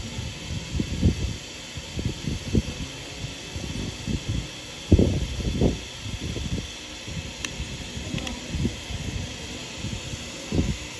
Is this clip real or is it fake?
real